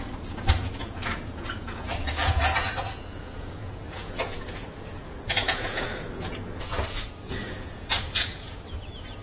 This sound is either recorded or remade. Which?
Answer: remade